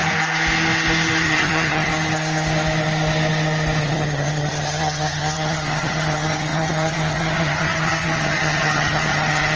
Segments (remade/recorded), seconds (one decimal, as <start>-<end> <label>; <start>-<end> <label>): 0.0-1.2 recorded; 1.2-1.9 remade; 1.9-3.8 recorded; 3.8-9.6 remade